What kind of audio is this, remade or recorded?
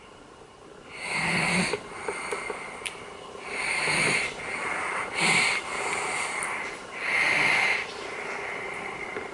remade